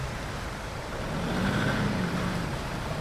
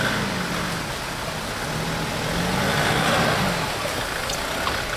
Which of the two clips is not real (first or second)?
first